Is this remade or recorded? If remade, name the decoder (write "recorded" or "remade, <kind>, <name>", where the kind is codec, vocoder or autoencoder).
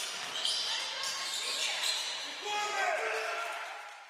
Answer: recorded